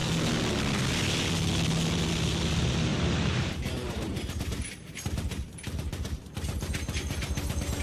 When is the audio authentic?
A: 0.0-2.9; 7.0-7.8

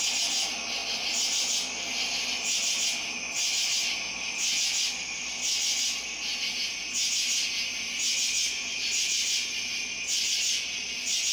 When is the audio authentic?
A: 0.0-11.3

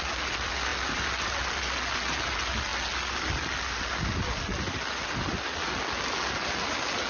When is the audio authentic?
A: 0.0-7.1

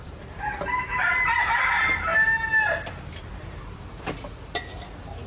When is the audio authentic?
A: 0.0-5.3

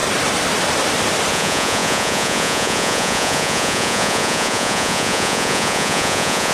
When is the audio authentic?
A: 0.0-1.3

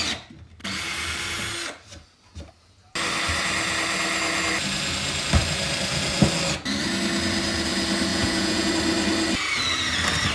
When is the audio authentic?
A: 0.0-8.1; 8.7-10.3